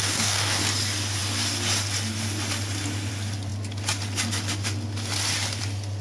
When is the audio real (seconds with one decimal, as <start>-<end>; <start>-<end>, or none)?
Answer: 0.6-6.0